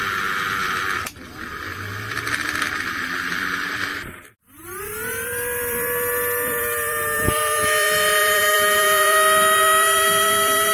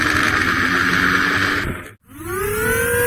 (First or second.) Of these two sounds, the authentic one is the second